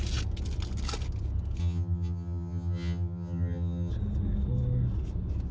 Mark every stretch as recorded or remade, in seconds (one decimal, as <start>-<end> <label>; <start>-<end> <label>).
0.0-1.6 recorded; 1.6-3.9 remade; 3.9-5.5 recorded

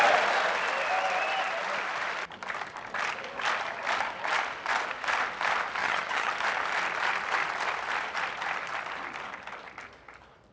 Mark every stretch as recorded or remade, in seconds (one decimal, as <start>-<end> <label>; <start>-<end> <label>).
0.0-5.8 recorded; 5.8-6.3 remade; 6.3-10.5 recorded

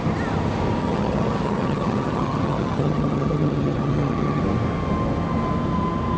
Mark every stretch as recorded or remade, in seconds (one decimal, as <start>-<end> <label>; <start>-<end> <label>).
0.0-0.8 recorded; 0.8-4.4 remade; 4.4-6.2 recorded

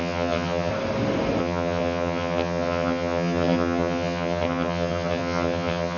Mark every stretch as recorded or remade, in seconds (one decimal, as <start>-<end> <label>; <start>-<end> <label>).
0.0-0.7 remade; 0.7-1.4 recorded; 1.4-6.0 remade

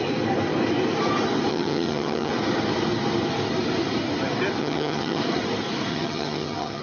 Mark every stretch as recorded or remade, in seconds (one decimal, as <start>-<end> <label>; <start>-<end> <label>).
0.0-1.5 recorded; 1.5-2.3 remade; 2.3-4.6 recorded; 4.6-5.2 remade; 5.2-5.9 recorded; 5.9-6.8 remade

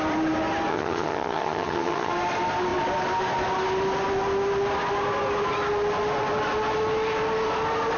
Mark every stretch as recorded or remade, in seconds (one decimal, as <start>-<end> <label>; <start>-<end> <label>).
0.0-0.7 recorded; 0.7-2.1 remade; 2.1-8.0 recorded